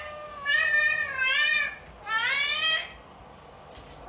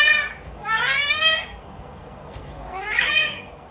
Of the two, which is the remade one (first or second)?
second